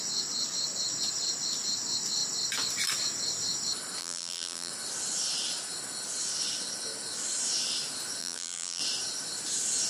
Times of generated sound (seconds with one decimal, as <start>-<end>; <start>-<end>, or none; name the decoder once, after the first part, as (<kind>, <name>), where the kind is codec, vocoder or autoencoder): 4.0-4.7 (vocoder, BigVGAN v2); 8.2-8.8